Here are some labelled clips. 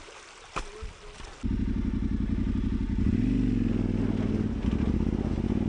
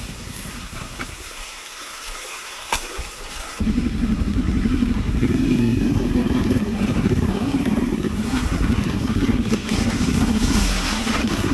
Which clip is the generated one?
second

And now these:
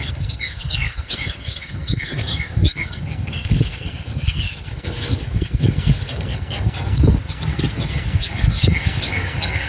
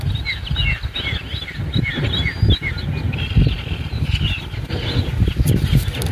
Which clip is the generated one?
first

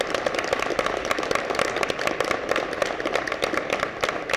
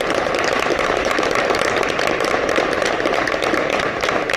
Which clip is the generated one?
second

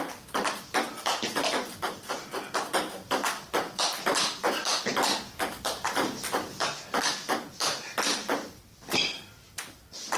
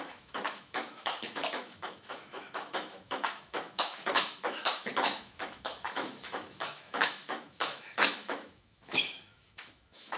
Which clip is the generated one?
second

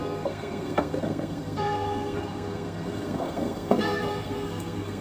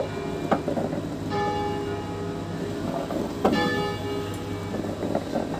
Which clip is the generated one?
first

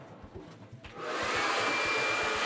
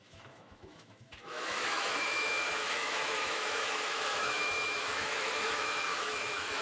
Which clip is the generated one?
second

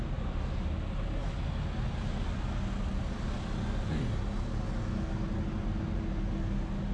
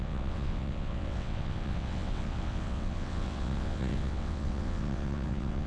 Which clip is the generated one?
second